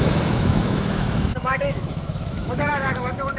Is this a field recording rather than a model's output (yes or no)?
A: no